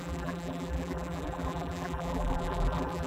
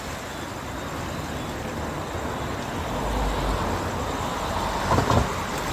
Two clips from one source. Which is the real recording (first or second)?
second